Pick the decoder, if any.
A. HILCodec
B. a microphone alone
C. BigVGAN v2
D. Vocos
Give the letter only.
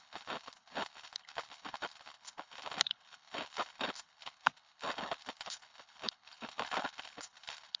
A